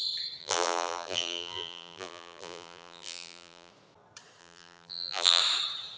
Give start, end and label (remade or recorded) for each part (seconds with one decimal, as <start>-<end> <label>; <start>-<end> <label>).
0.0-0.4 recorded; 0.4-3.7 remade; 3.7-4.4 recorded; 4.4-5.4 remade; 5.4-6.0 recorded